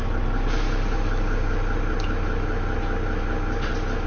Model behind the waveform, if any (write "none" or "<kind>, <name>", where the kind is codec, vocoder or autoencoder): none